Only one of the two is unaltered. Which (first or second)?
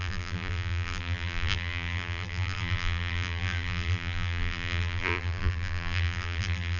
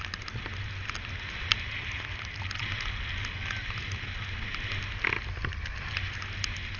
second